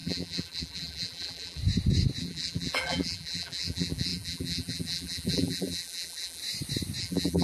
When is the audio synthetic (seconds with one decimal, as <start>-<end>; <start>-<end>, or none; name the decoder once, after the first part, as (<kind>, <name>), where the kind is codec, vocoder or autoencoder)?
0.0-1.6 (vocoder, BigVGAN v2); 2.2-6.4; 7.0-7.4